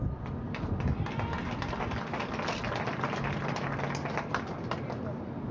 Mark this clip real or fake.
real